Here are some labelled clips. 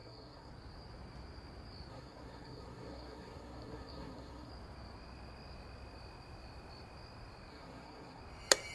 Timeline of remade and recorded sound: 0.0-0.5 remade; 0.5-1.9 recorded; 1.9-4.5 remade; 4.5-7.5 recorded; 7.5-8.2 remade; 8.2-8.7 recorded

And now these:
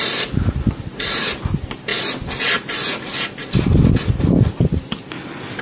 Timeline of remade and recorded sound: 0.0-5.6 recorded

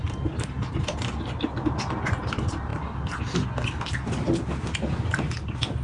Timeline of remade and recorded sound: 0.0-5.8 recorded

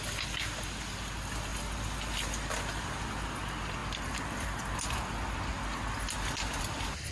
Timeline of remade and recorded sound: 0.0-7.1 recorded

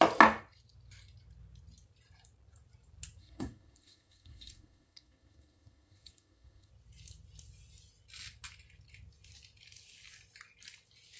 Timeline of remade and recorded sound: 0.0-3.2 recorded; 3.2-6.7 remade; 6.7-11.2 recorded

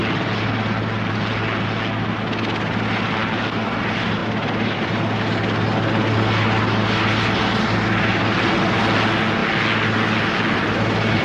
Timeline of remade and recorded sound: 0.0-11.2 recorded

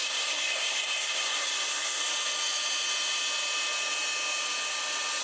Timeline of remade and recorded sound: 0.0-2.0 remade; 2.0-5.2 recorded

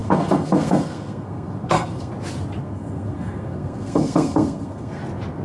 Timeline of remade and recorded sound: 0.0-2.1 remade; 2.1-2.6 recorded; 2.6-5.0 remade; 5.0-5.4 recorded